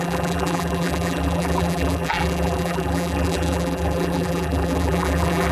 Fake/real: fake